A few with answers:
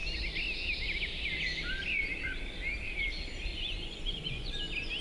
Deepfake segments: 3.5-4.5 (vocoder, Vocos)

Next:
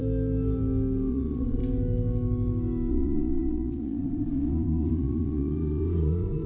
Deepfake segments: 1.1-1.6 (vocoder, Vocos); 2.9-6.5

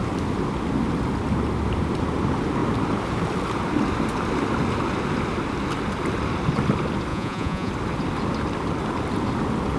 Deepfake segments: 7.1-7.7 (vocoder, Vocos)

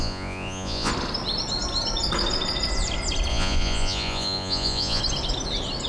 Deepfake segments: 0.0-0.9 (vocoder, Vocos); 3.3-5.0

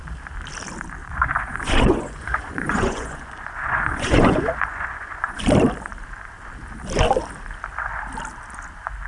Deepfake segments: 1.0-5.4 (vocoder, Vocos)